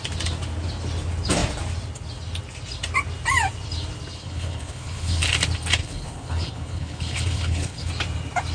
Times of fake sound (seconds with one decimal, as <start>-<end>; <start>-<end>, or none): 4.2-5.2; 5.8-7.9